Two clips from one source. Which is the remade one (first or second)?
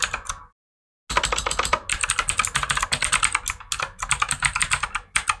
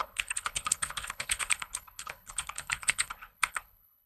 second